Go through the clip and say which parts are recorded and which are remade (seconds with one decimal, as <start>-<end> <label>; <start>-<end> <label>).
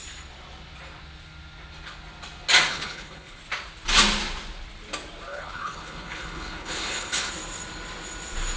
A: 0.0-2.7 recorded; 2.7-3.4 remade; 3.4-5.3 recorded; 5.3-7.3 remade; 7.3-8.6 recorded